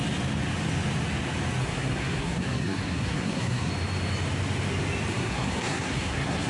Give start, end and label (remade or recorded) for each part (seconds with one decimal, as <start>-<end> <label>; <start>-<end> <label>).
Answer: 0.0-1.6 recorded; 1.6-3.7 remade; 3.7-5.1 recorded; 5.1-6.5 remade